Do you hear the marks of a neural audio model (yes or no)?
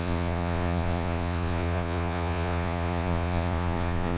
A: yes